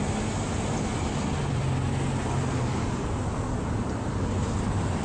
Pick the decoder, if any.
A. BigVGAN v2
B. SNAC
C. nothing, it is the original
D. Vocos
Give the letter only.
C